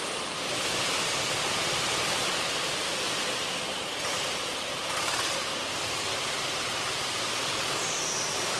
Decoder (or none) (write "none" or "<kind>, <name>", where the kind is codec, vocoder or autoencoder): vocoder, BigVGAN v2